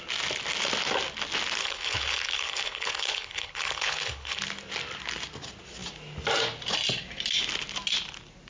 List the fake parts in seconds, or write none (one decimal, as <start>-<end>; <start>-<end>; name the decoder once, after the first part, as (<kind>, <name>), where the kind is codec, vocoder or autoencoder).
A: 1.6-4.4 (codec, HILCodec)